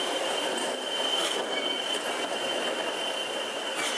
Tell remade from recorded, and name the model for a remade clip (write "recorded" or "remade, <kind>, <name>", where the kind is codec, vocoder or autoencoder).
recorded